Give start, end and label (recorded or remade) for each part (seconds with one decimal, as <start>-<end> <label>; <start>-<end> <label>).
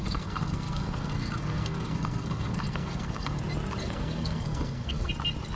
0.0-3.4 remade; 3.4-3.8 recorded; 3.8-5.1 remade; 5.1-5.6 recorded